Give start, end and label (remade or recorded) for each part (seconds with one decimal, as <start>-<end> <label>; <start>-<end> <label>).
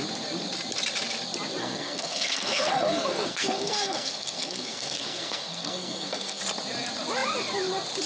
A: 0.0-1.6 recorded; 1.6-6.4 remade; 6.4-8.1 recorded